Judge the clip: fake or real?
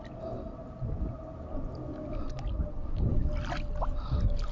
real